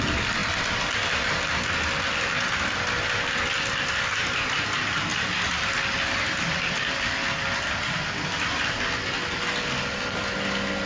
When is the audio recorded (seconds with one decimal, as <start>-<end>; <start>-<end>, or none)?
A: 0.0-10.9